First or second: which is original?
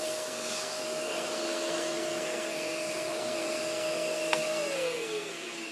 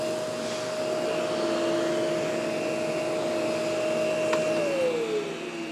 second